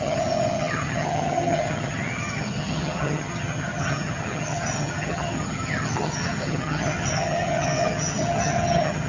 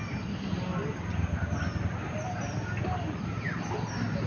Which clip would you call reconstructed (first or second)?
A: first